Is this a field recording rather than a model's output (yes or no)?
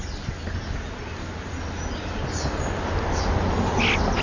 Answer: yes